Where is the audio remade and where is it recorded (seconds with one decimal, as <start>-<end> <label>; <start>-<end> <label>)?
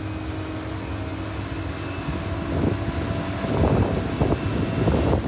0.0-5.3 recorded